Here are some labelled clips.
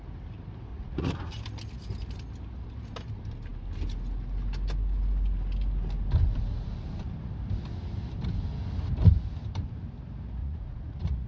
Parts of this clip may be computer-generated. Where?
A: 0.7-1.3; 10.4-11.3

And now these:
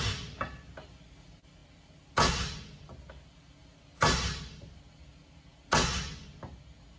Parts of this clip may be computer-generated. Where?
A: none

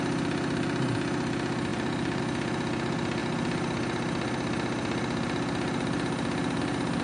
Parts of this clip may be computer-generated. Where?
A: 1.7-2.2

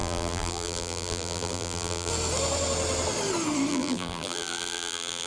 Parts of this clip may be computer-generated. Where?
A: 0.0-2.1; 3.7-5.3

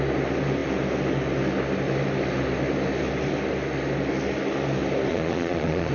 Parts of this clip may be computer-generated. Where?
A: 5.1-5.9

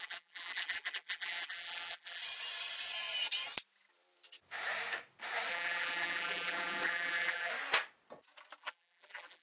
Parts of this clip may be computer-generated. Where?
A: 0.0-2.2; 5.5-7.5; 8.6-9.4

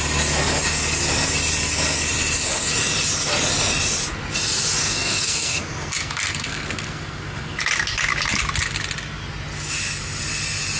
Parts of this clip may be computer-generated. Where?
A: 4.8-7.6